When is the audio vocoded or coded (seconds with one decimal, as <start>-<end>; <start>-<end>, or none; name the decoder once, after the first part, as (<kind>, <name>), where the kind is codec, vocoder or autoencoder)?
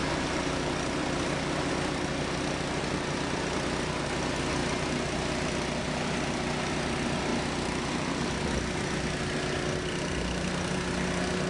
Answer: none